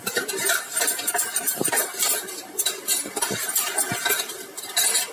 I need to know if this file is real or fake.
fake